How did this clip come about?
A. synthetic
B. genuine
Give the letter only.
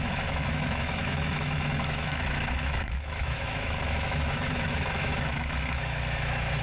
A